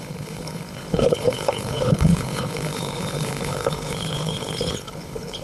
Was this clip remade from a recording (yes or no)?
yes